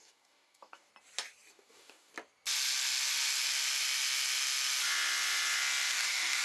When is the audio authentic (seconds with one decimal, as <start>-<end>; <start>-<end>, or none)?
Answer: 0.9-1.5; 2.1-5.9